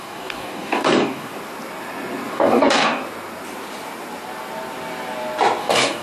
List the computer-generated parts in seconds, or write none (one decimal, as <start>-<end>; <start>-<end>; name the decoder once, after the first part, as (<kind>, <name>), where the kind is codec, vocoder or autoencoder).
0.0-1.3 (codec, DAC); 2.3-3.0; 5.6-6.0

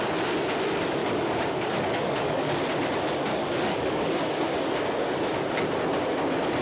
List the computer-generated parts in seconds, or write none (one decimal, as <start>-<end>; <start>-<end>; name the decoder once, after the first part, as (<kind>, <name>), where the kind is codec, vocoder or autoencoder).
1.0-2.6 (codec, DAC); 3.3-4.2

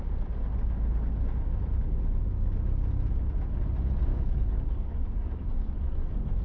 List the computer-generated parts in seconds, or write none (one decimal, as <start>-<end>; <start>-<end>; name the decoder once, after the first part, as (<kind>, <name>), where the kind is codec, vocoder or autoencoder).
4.1-5.7 (codec, DAC)